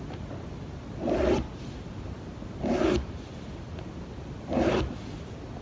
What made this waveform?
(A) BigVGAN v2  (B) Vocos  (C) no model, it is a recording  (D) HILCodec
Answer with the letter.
C